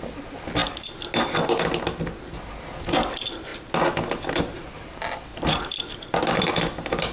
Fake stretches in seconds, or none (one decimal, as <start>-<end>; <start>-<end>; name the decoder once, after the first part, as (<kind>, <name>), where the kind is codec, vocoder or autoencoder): 5.3-6.5 (vocoder, BigVGAN v2)